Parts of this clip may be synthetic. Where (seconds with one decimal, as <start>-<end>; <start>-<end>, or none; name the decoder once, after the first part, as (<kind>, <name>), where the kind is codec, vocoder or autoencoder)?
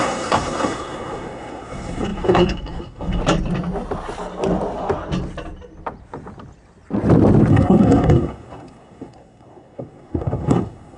0.0-3.2 (codec, SNAC); 7.5-11.0